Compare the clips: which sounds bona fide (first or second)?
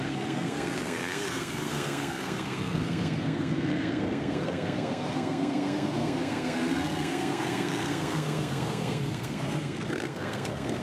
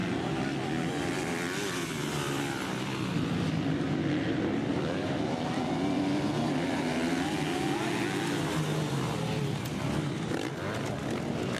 second